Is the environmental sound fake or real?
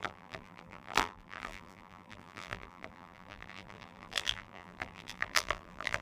fake